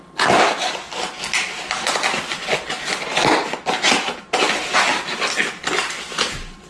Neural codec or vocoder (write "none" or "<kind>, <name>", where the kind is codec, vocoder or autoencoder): none